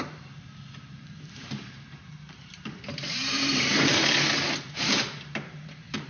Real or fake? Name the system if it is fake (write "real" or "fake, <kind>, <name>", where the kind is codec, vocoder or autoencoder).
fake, vocoder, BigVGAN v2